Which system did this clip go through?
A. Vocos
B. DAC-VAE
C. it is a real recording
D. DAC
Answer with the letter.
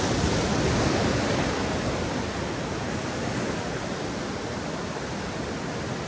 C